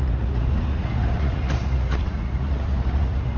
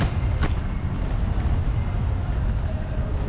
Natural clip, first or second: second